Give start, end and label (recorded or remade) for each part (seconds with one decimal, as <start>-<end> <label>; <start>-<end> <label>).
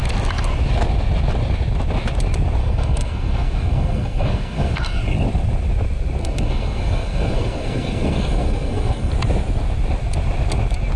0.0-2.6 recorded; 2.6-5.0 remade; 5.0-6.2 recorded; 6.2-9.1 remade; 9.1-11.0 recorded